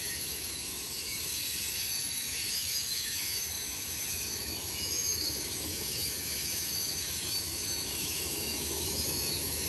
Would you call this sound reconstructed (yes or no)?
yes